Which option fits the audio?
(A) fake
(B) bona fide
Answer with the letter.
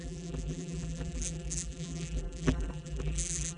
A